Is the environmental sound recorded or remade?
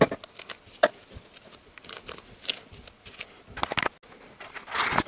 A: recorded